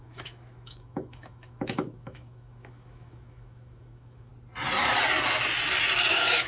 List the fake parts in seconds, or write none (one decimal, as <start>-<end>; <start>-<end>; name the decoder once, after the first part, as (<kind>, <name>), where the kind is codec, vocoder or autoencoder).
0.0-4.3 (autoencoder, DAC-VAE); 6.1-6.5